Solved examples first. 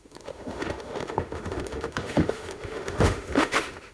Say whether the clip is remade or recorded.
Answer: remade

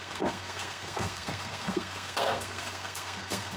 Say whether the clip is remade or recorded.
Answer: remade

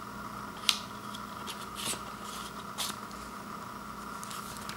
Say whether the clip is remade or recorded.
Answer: recorded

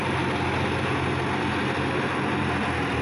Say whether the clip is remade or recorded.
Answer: recorded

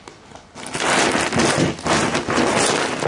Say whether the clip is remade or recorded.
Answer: recorded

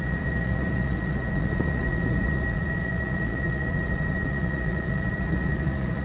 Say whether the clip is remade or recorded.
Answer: remade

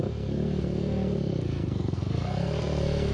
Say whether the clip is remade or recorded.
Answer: remade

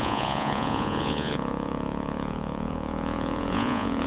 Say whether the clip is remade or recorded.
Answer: remade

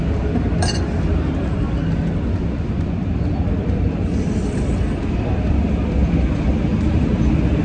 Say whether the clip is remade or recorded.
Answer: recorded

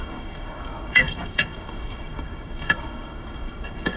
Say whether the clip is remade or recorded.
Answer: remade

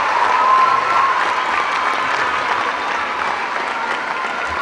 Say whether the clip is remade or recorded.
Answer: recorded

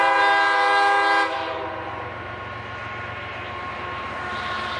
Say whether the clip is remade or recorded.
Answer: recorded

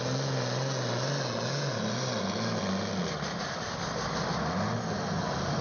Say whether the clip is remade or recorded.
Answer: recorded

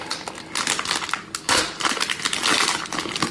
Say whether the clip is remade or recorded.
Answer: recorded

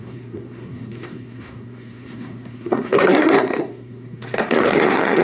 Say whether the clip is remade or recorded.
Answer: remade